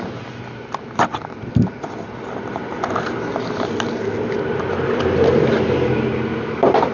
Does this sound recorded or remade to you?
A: recorded